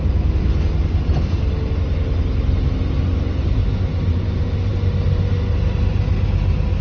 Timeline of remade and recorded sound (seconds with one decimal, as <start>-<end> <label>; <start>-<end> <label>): 0.0-6.8 recorded